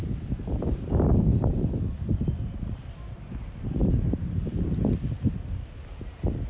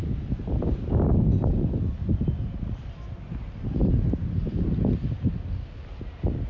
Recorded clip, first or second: second